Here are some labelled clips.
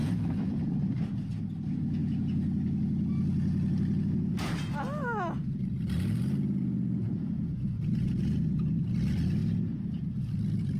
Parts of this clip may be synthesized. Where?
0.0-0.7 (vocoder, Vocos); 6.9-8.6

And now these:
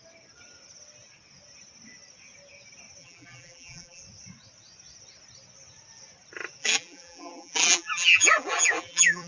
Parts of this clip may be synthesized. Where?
3.0-4.0 (vocoder, BigVGAN v2); 6.6-9.3

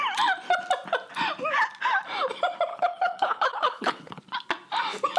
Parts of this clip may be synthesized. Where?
2.7-4.2 (codec, HILCodec)

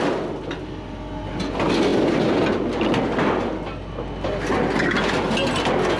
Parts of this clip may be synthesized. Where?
none

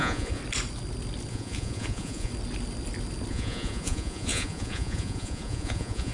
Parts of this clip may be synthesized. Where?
0.0-0.4 (vocoder, Vocos); 1.3-2.3; 3.3-6.1

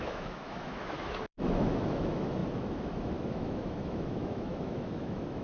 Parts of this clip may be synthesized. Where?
0.0-5.4 (autoencoder, DAC-VAE)

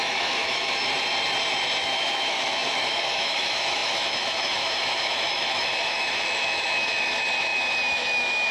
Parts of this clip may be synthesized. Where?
0.0-0.8 (autoencoder, DAC-VAE); 1.8-8.5